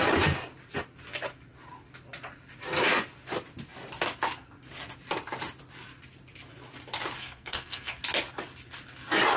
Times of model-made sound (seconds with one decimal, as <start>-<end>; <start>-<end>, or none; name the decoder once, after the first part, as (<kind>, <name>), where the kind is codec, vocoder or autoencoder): 7.2-8.0 (codec, SNAC)